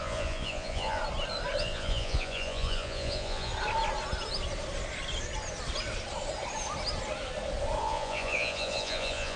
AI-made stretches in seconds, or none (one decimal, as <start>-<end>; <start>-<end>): 0.0-1.0; 1.6-3.5; 7.8-9.4